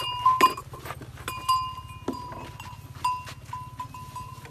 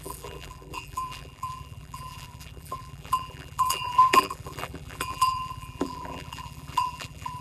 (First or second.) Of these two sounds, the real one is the first